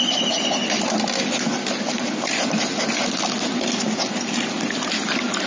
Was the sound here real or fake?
real